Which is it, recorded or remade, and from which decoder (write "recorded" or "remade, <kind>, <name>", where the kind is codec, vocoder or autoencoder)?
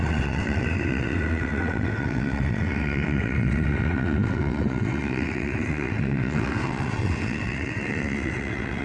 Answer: remade, vocoder, WaveNeXt